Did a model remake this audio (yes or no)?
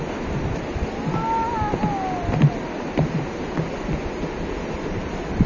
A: no